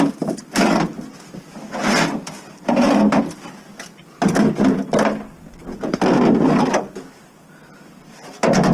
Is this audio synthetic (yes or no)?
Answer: no